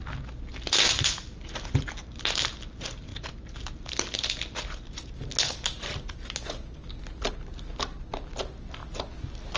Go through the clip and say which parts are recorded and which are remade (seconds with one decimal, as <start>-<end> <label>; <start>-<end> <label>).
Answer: 0.0-9.6 recorded